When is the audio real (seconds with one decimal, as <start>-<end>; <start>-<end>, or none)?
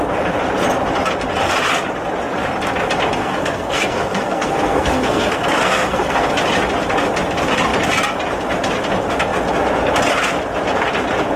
0.0-3.2; 6.3-11.4